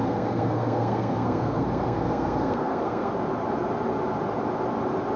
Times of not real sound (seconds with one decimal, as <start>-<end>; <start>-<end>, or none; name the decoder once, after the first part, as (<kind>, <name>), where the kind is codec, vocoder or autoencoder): 0.0-3.1 (codec, SNAC)